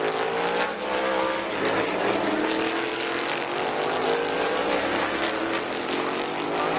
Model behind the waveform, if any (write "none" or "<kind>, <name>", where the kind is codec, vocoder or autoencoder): none